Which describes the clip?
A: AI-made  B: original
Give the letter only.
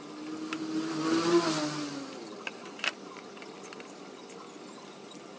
B